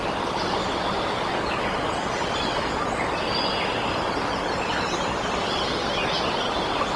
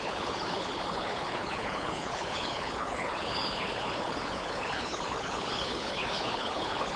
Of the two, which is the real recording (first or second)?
first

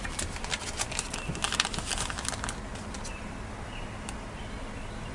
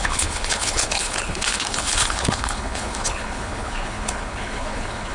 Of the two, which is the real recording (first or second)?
first